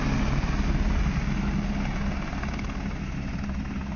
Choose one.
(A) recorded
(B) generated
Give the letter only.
A